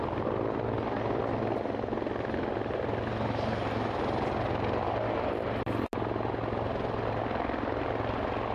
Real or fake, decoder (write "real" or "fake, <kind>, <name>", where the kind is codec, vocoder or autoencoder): real